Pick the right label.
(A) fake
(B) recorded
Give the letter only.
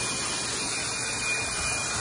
B